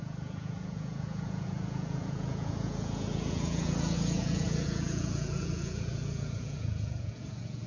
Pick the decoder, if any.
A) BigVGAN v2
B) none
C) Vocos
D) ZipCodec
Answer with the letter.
C